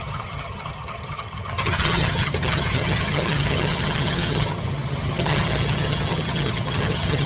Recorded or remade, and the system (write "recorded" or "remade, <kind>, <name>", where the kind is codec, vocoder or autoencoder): remade, vocoder, HiFi-GAN